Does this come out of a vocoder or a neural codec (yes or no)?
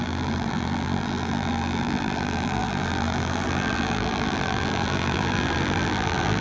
yes